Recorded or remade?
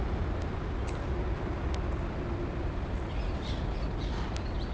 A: recorded